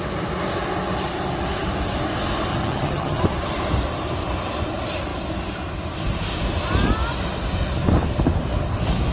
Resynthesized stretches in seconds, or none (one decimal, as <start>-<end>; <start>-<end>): 2.5-3.2